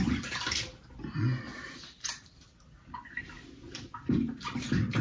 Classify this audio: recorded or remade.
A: recorded